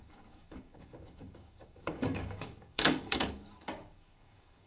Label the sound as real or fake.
fake